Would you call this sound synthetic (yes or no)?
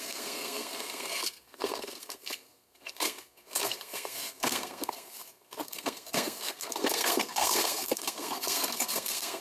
yes